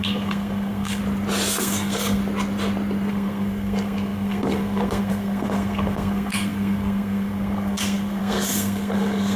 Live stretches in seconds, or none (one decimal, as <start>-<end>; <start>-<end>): 1.0-1.6; 2.2-3.1